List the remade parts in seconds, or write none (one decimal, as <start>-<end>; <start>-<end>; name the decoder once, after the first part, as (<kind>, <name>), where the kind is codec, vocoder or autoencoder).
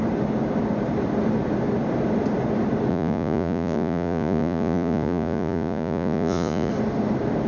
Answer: 2.9-6.7 (vocoder, Vocos)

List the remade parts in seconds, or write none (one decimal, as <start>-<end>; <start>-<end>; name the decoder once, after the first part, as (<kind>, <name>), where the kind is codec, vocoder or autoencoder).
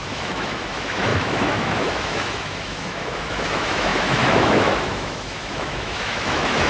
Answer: 0.0-6.7 (autoencoder, DAC-VAE)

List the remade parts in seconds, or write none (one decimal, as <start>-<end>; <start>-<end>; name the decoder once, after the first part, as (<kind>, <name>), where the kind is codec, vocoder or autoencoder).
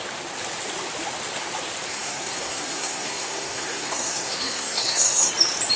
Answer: 1.9-5.3 (codec, SNAC)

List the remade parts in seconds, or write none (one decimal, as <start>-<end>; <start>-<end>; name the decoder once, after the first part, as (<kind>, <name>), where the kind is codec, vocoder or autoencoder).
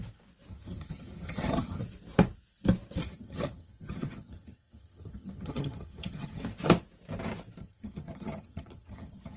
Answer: 0.5-1.8 (vocoder, HiFi-GAN); 3.0-6.4; 7.6-9.4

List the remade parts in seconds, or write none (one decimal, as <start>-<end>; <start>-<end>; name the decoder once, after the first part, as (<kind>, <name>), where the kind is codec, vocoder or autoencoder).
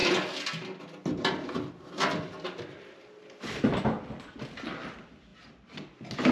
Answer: none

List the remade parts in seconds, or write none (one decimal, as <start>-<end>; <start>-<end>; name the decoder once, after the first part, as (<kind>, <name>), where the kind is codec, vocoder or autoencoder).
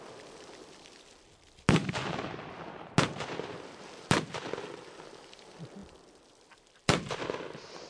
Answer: none